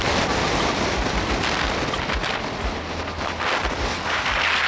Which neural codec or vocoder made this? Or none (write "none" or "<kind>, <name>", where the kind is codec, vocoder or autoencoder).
none